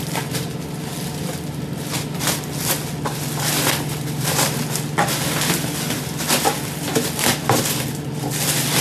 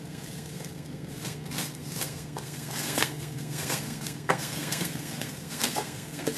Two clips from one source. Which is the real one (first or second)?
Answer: first